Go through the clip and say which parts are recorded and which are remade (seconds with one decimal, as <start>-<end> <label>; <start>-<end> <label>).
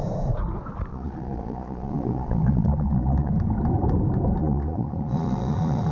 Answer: 0.0-0.9 recorded; 0.9-3.3 remade; 3.3-4.4 recorded; 4.4-5.9 remade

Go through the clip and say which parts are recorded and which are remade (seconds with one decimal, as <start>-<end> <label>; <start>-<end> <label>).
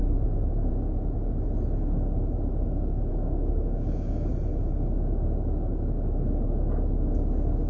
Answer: 0.0-3.1 recorded; 3.1-4.3 remade; 4.3-7.7 recorded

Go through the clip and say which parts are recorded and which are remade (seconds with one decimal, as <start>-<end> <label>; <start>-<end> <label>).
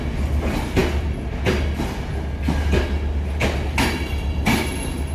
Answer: 0.0-5.1 recorded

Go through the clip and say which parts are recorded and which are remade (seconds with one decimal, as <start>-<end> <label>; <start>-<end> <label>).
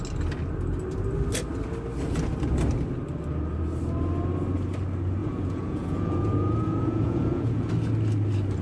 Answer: 0.0-5.2 recorded; 5.2-7.7 remade; 7.7-8.6 recorded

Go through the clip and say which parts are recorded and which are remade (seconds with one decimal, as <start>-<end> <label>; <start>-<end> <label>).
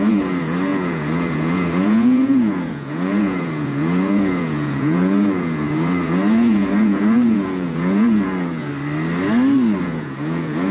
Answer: 0.0-8.7 remade; 8.7-9.8 recorded; 9.8-10.7 remade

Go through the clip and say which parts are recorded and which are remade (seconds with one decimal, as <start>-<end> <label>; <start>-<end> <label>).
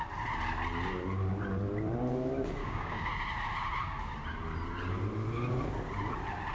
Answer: 0.0-2.6 recorded; 2.6-3.1 remade; 3.1-6.5 recorded